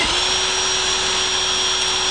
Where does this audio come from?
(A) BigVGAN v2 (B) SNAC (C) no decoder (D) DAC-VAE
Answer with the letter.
C